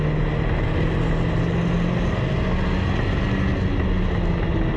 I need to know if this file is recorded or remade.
recorded